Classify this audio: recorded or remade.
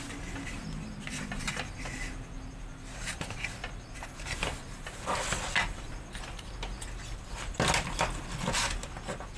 recorded